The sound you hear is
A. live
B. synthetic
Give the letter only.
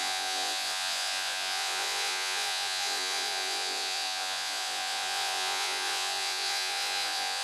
B